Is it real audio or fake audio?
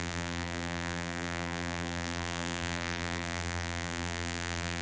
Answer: fake